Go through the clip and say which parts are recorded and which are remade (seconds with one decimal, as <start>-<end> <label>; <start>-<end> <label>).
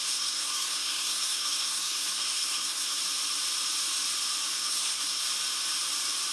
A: 0.0-3.0 remade; 3.0-4.6 recorded; 4.6-5.2 remade; 5.2-6.3 recorded